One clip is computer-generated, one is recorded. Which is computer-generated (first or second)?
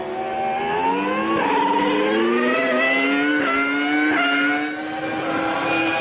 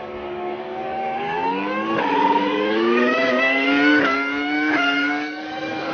second